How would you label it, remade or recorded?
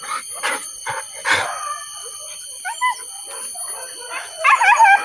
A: recorded